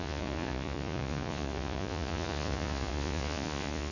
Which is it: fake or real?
fake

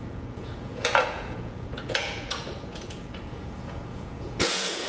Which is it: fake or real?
fake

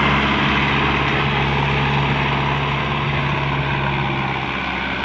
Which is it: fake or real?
real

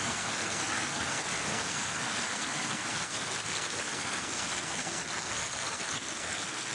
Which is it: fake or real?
fake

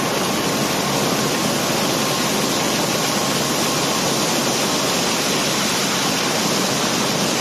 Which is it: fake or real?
real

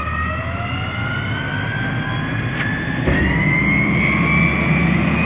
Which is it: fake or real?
real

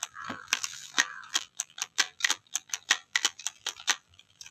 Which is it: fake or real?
fake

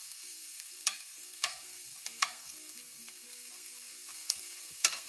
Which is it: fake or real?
fake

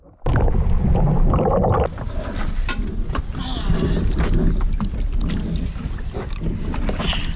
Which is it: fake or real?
real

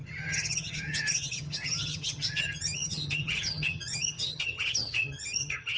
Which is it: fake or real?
fake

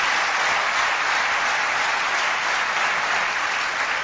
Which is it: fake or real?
real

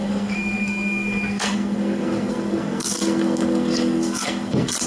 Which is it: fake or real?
fake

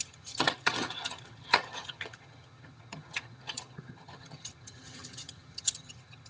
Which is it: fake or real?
fake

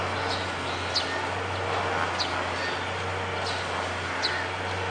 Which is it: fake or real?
real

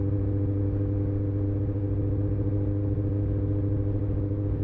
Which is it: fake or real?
real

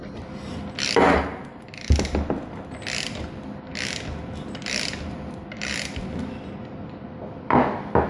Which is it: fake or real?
real